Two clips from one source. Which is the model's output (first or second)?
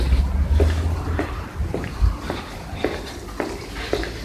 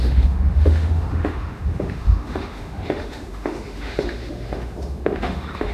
second